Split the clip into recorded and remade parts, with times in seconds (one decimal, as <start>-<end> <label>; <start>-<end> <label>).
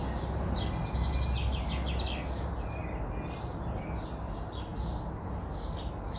0.0-6.2 recorded